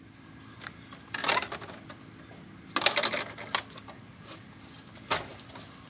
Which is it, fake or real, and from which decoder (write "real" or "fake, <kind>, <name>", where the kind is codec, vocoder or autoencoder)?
real